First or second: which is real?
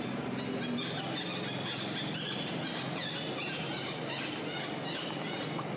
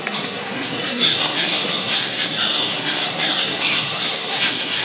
first